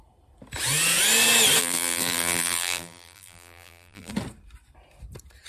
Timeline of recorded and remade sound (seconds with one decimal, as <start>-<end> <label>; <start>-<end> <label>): 0.0-1.6 recorded; 1.6-4.1 remade; 4.1-5.5 recorded